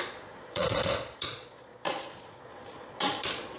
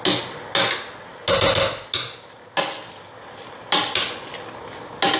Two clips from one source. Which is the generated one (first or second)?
first